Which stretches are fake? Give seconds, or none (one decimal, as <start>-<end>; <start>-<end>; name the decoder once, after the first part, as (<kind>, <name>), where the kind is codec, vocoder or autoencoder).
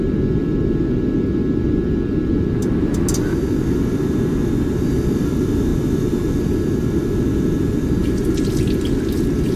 none